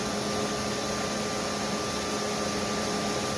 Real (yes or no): yes